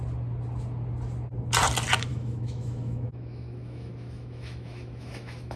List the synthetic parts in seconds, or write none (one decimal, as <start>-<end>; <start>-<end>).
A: 2.1-5.6